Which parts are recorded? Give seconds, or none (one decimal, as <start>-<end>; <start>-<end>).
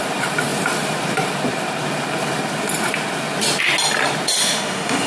0.0-4.4